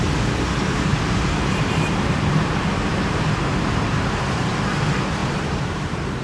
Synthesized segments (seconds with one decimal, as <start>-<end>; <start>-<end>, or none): 0.9-4.6